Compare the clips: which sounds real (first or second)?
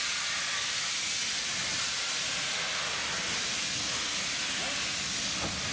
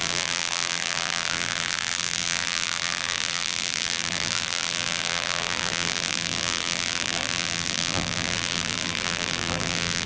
first